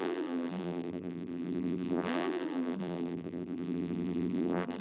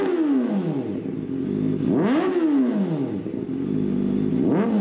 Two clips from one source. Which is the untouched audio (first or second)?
second